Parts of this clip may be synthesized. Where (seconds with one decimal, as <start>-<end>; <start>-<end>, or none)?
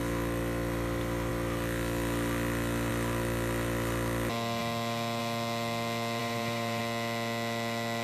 6.2-6.8